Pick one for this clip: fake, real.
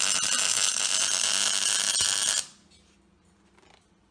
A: real